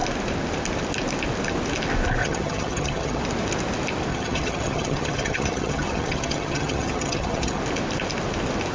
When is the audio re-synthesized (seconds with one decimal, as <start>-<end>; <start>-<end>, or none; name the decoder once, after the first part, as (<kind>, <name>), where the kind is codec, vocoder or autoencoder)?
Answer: 2.2-3.2 (vocoder, HiFi-GAN); 4.1-7.6